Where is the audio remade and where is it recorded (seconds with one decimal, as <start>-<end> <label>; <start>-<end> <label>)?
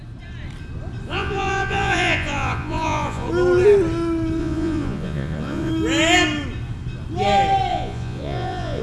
0.0-1.1 recorded; 1.1-3.3 remade; 3.3-4.4 recorded; 4.4-5.7 remade; 5.7-7.7 recorded; 7.7-8.8 remade